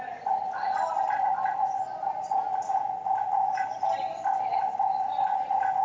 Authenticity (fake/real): real